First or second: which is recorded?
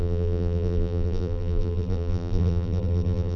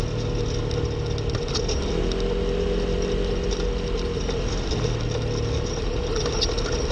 second